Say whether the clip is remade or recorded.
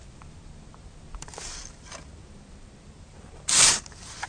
remade